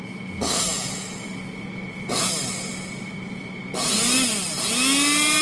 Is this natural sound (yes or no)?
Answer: yes